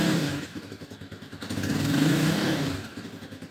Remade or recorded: remade